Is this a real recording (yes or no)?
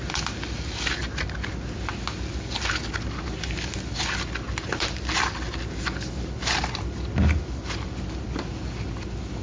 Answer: yes